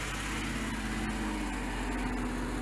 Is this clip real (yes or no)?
yes